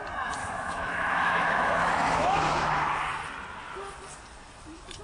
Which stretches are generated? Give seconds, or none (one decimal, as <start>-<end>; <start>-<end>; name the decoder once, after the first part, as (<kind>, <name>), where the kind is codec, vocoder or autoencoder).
0.4-2.7 (autoencoder, DAC-VAE)